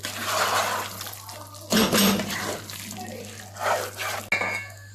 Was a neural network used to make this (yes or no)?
no